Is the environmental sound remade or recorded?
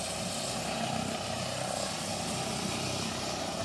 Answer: recorded